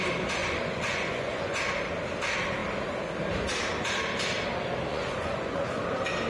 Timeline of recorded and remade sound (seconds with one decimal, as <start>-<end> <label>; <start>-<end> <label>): 0.0-0.4 recorded; 0.4-1.6 remade; 1.6-4.9 recorded; 4.9-5.8 remade; 5.8-6.3 recorded